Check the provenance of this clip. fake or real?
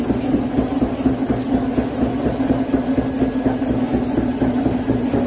real